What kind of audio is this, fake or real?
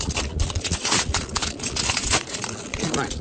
fake